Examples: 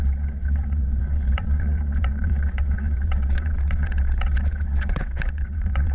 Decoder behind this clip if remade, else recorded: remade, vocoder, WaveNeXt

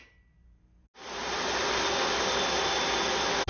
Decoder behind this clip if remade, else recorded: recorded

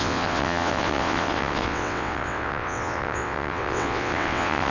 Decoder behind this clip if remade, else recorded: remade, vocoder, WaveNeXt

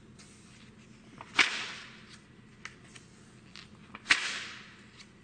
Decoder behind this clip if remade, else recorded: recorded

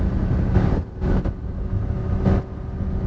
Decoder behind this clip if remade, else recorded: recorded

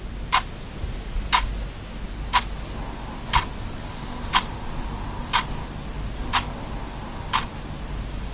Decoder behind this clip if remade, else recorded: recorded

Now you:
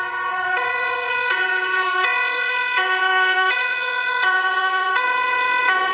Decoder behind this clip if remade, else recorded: remade, vocoder, WaveNeXt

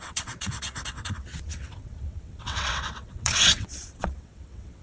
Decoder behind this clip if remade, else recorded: remade, vocoder, WaveNeXt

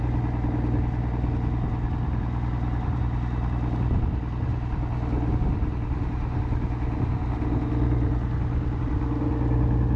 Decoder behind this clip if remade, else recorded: recorded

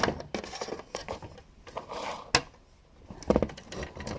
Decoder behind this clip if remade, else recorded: recorded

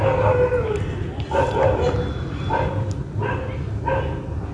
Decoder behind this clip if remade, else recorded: recorded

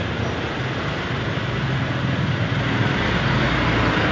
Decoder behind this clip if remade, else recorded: recorded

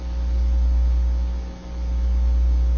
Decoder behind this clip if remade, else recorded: recorded